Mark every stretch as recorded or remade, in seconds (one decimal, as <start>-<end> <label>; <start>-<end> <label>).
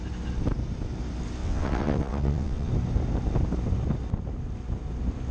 0.0-1.4 recorded; 1.4-2.7 remade; 2.7-5.3 recorded